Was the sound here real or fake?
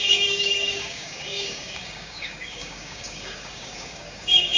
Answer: fake